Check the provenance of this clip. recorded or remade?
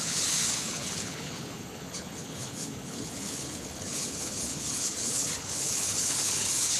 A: remade